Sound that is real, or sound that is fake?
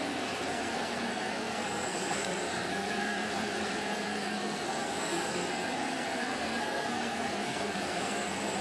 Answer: fake